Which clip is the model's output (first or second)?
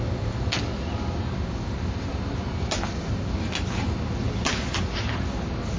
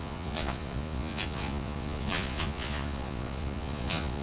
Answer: second